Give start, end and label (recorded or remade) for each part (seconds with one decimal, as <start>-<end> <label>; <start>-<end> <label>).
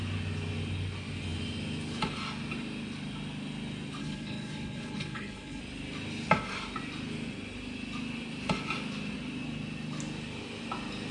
0.0-4.0 recorded; 4.0-5.6 remade; 5.6-11.1 recorded